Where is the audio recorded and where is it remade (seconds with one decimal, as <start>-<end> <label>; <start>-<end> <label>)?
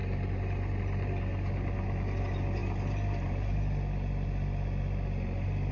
0.0-5.7 recorded